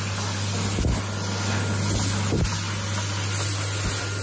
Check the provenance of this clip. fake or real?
real